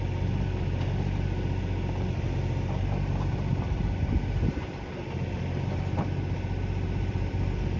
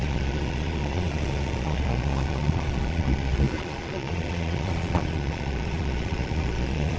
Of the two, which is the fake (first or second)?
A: second